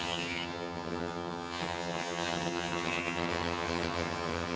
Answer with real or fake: fake